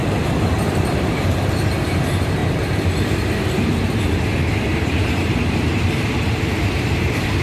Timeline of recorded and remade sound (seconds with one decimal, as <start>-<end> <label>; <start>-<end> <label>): 0.0-0.6 recorded; 0.6-2.4 remade; 2.4-4.4 recorded; 4.4-7.4 remade